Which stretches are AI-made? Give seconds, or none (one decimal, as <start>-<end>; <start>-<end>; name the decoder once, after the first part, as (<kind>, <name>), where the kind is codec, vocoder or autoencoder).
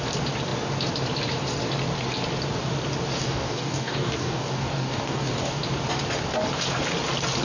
3.2-5.6 (codec, DAC)